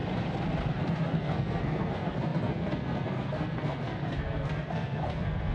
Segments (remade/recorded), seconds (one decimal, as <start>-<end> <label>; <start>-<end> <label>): 0.0-0.7 recorded; 0.7-5.5 remade